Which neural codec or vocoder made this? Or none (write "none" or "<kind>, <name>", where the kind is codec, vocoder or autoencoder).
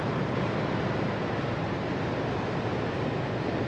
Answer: none